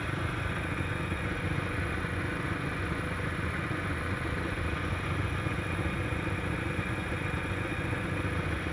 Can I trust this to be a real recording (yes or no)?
no